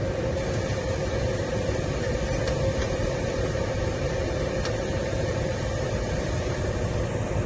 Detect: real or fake fake